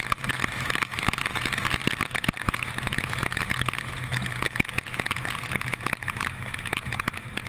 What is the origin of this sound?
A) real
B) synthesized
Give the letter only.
B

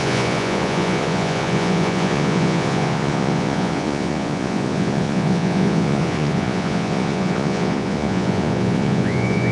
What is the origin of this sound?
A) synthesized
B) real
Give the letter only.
A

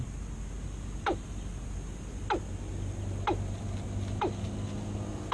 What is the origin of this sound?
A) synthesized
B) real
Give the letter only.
B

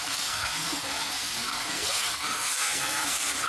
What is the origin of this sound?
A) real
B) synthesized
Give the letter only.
B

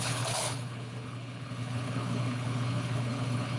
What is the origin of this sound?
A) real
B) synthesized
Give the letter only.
B